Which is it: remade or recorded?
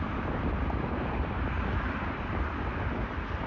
recorded